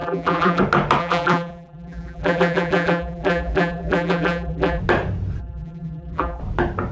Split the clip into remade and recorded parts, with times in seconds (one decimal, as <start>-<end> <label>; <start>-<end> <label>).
0.0-0.6 remade; 0.6-1.0 recorded; 1.0-4.8 remade; 4.8-5.4 recorded; 5.4-6.4 remade; 6.4-6.9 recorded